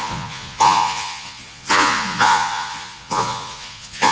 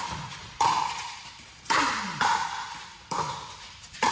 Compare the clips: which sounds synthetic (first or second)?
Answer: first